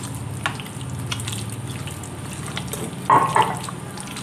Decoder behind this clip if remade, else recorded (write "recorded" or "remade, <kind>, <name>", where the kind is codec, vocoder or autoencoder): recorded